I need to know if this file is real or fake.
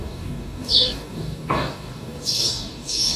fake